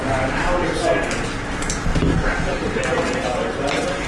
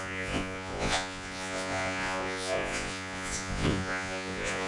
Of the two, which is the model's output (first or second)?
second